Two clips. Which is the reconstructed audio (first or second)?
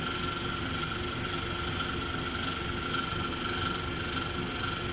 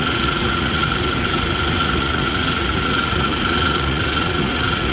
second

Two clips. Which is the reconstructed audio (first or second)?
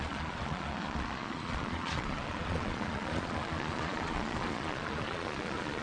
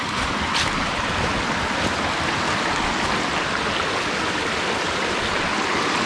first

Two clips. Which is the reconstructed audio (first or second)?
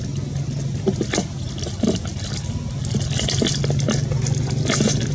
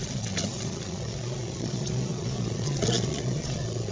second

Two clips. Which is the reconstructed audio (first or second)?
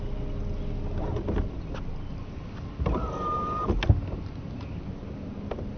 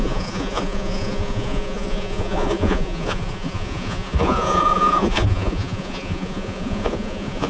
second